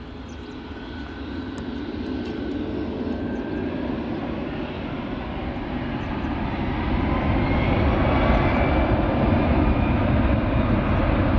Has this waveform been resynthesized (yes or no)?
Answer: no